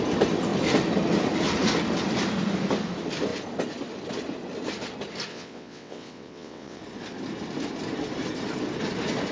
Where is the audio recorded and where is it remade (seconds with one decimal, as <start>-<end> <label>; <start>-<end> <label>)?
0.0-5.3 recorded; 5.3-6.8 remade; 6.8-9.3 recorded